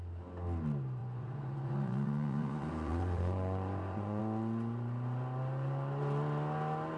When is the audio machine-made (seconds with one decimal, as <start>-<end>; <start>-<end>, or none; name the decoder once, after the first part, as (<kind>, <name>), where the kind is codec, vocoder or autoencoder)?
1.0-4.2 (vocoder, Vocos)